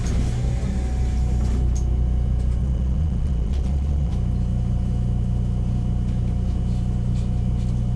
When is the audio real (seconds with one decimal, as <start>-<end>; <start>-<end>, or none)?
0.0-2.6; 4.1-8.0